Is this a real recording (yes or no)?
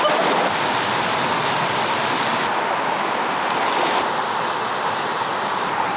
yes